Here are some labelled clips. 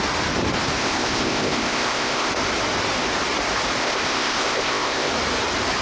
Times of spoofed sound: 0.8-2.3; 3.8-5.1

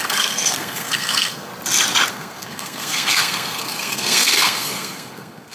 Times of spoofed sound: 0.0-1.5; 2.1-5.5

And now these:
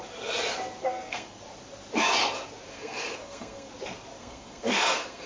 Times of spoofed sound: 0.8-1.4; 2.7-3.7; 4.2-5.3

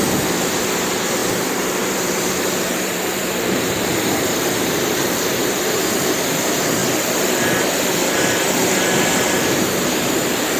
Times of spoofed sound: 0.0-6.8; 8.0-10.6

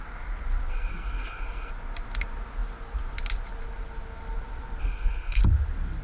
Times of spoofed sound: 0.7-1.7; 4.8-5.4

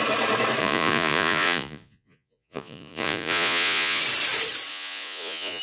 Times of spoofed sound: 0.6-4.0; 4.7-5.6